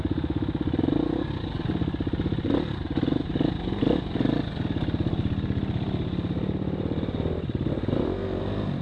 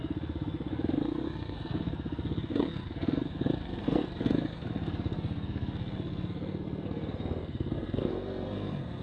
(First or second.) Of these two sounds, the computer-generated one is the second